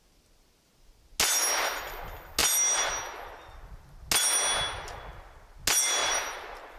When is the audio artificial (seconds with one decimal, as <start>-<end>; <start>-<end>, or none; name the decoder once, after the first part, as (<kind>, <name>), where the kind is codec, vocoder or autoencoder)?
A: 6.0-6.8 (vocoder, BigVGAN v2)